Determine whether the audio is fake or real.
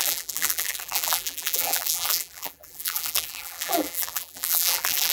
fake